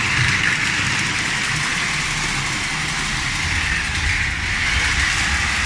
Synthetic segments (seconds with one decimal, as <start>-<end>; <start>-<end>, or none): none